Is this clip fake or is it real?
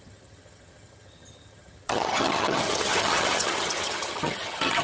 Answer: fake